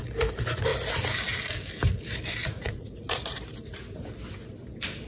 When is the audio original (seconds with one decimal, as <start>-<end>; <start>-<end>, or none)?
0.0-2.4; 3.4-5.1